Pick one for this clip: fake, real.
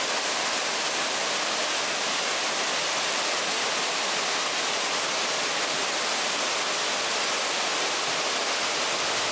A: real